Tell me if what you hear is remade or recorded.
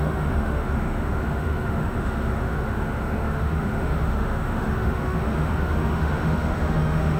remade